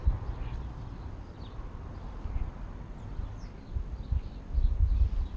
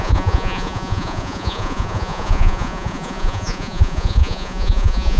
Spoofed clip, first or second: second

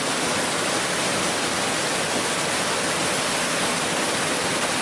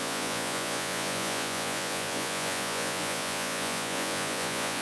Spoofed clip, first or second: second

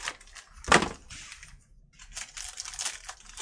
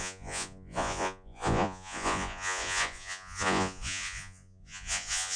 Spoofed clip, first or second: second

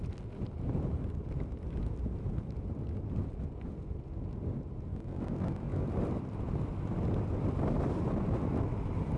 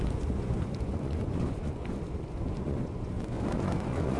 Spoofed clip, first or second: second